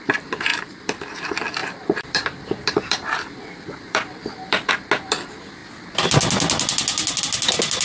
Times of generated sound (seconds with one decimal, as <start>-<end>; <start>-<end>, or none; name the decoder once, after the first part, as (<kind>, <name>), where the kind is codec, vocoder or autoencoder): 0.5-1.2 (vocoder, BigVGAN v2); 1.6-4.7